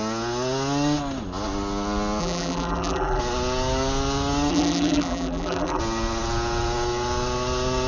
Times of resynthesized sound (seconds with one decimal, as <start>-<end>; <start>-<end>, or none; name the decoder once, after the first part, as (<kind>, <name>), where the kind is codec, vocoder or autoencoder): 2.2-3.2 (vocoder, BigVGAN v2); 4.5-5.8